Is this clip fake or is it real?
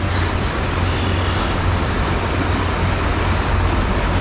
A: real